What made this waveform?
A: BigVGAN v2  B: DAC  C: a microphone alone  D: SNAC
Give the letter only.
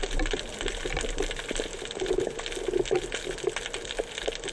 C